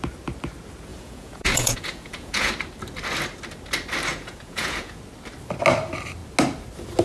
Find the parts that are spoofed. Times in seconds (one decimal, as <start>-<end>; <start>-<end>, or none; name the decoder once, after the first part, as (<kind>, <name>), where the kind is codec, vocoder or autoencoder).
0.9-2.5 (vocoder, Vocos); 4.1-5.0